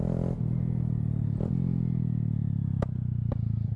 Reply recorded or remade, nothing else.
recorded